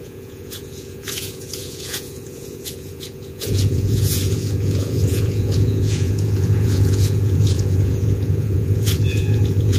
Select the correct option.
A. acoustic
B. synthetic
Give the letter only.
B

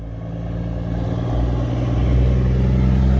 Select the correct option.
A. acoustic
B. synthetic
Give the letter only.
A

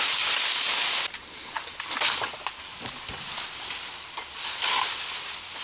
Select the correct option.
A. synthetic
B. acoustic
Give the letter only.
B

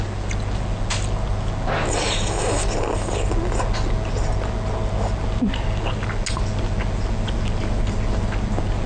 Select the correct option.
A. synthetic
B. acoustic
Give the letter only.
B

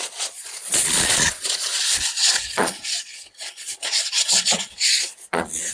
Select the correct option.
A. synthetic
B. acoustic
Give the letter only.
A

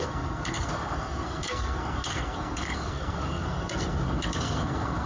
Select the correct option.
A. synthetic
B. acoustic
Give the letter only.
A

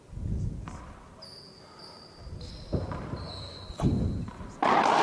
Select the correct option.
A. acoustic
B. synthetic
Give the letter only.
A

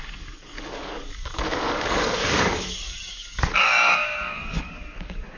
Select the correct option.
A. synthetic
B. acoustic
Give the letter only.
A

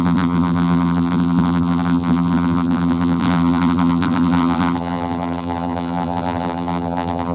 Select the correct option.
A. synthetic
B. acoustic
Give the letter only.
A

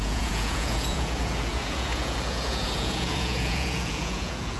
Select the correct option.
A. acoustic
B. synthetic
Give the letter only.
B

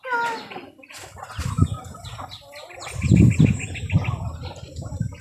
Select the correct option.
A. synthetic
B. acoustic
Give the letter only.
B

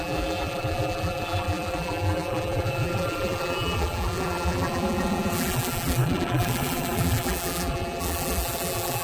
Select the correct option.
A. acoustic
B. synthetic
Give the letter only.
B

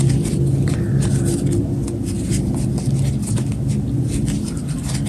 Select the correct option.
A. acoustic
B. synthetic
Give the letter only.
A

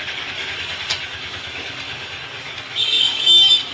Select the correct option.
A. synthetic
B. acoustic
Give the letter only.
A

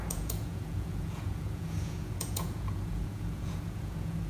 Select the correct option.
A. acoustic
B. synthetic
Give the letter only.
B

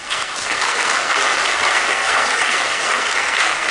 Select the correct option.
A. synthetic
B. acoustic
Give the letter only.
A